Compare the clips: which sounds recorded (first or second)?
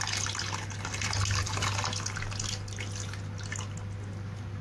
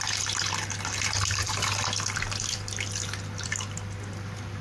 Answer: first